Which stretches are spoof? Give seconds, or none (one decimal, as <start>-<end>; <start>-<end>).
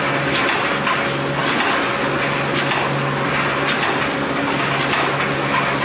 none